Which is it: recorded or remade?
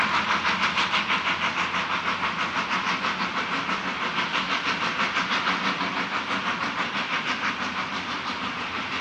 recorded